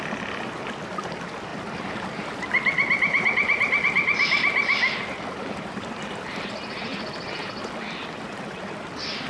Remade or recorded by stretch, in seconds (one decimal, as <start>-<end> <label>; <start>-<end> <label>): 0.0-9.3 recorded